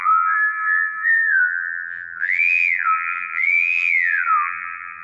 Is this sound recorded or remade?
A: remade